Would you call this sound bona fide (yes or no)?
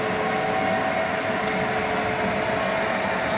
yes